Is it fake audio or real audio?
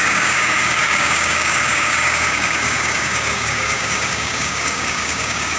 fake